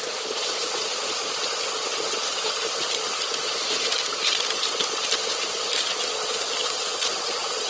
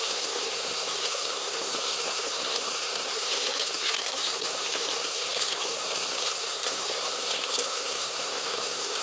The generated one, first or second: second